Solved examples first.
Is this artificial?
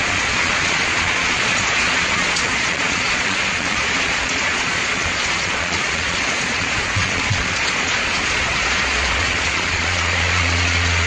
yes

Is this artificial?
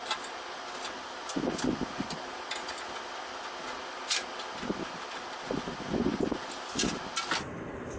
no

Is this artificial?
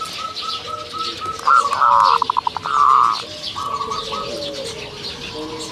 no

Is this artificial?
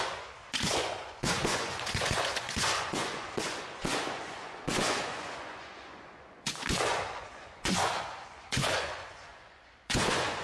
yes